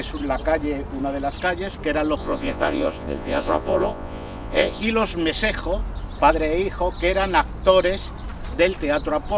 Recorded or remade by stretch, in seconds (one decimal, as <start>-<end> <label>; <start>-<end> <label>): 0.0-2.2 recorded; 2.2-4.8 remade; 4.8-9.4 recorded

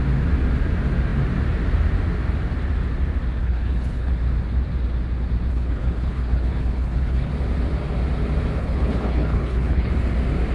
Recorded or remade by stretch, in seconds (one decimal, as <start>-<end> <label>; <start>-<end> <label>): 0.0-3.4 recorded; 3.4-4.1 remade; 4.1-5.5 recorded; 5.5-7.3 remade; 7.3-8.6 recorded; 8.6-9.9 remade; 9.9-10.5 recorded

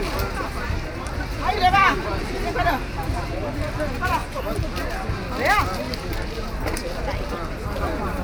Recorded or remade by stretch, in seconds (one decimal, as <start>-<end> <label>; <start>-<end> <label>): 0.0-1.3 recorded; 1.3-2.1 remade; 2.1-8.2 recorded

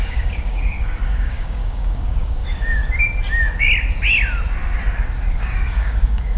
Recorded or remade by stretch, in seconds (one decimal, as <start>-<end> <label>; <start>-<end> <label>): 0.0-2.8 remade; 2.8-5.3 recorded; 5.3-6.4 remade

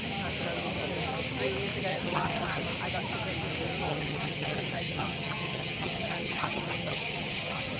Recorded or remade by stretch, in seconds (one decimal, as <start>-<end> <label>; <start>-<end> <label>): 0.0-1.9 recorded; 1.9-2.6 remade; 2.6-3.9 recorded; 3.9-7.8 remade

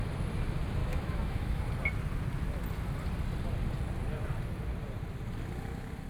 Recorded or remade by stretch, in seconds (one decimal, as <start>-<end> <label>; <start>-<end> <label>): 0.0-0.8 recorded; 0.8-1.6 remade; 1.6-6.1 recorded

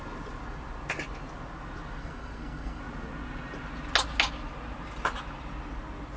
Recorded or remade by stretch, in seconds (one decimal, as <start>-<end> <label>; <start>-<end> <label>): 0.0-2.0 recorded; 2.0-2.8 remade; 2.8-6.2 recorded